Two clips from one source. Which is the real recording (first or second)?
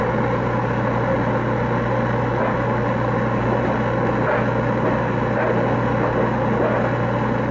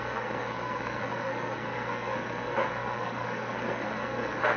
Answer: first